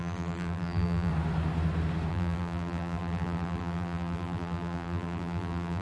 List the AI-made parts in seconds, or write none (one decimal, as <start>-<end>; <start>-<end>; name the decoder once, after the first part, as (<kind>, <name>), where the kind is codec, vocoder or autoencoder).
0.0-1.1 (vocoder, BigVGAN v2); 2.1-5.8